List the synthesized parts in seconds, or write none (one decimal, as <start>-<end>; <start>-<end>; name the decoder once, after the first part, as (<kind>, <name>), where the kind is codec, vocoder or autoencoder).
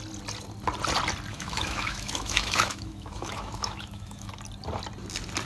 1.3-4.3 (autoencoder, DAC-VAE)